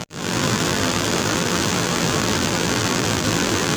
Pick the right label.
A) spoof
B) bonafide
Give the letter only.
A